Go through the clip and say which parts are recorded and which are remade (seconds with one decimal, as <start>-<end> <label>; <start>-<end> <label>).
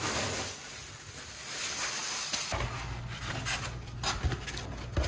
0.0-2.0 remade; 2.0-5.1 recorded